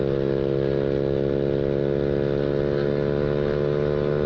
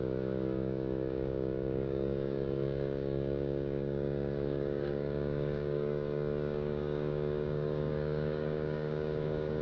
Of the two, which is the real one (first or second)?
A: first